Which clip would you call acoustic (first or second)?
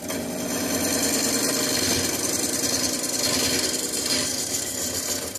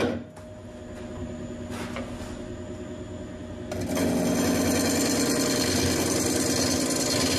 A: second